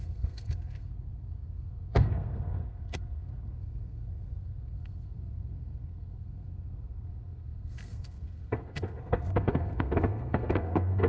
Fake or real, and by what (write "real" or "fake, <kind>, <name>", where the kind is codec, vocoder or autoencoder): fake, codec, SNAC